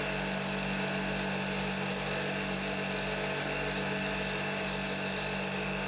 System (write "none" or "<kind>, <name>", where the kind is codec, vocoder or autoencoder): none